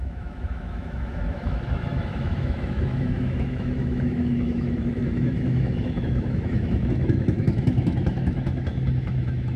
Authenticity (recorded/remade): remade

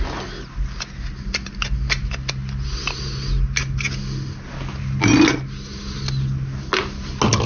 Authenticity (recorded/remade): recorded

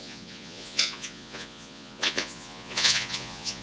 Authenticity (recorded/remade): remade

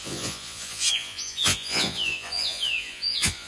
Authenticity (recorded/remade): remade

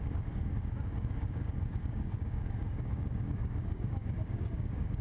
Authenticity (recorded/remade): remade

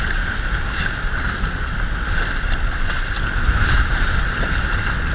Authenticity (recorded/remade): recorded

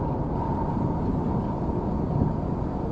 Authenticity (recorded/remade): recorded